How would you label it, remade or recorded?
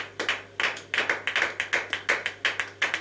recorded